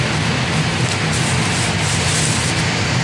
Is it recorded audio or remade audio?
recorded